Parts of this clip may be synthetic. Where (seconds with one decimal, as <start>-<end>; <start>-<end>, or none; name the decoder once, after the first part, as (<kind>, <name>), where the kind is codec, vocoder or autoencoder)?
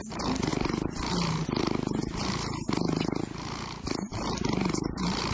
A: none